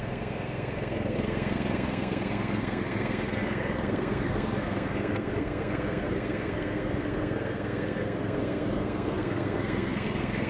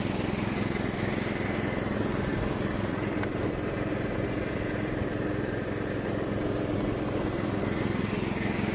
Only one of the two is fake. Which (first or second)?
first